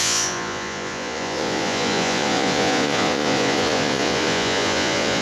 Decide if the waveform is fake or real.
fake